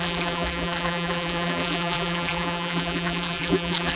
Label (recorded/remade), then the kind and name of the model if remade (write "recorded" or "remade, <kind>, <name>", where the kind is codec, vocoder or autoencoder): remade, vocoder, BigVGAN v2